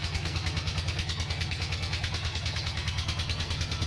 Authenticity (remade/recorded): remade